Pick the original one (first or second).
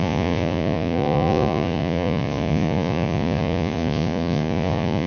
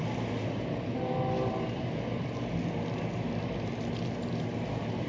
second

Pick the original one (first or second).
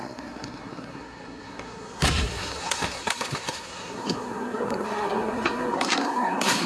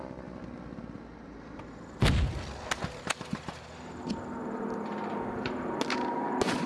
second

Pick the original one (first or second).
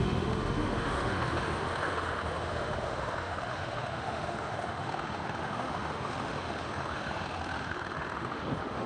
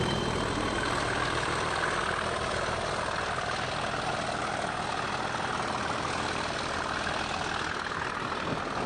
second